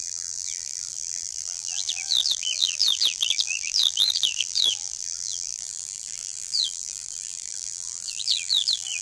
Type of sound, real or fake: fake